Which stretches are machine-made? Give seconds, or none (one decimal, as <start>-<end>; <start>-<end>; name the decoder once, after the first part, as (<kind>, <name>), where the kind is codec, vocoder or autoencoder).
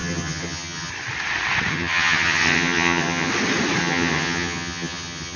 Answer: 0.0-0.9 (vocoder, HiFi-GAN); 1.7-3.3; 3.8-5.4